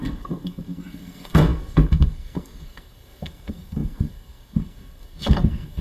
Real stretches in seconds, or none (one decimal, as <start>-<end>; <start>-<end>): none